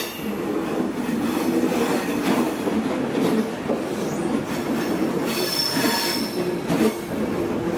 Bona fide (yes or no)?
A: yes